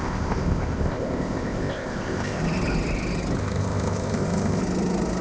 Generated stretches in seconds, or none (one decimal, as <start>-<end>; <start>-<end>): 0.0-2.4; 3.4-4.6